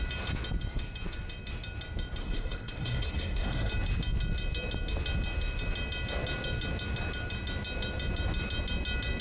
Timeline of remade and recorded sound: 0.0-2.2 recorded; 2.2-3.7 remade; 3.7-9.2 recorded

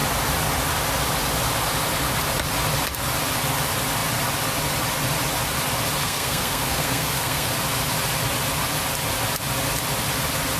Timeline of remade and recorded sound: 0.0-6.0 recorded; 6.0-7.5 remade; 7.5-10.6 recorded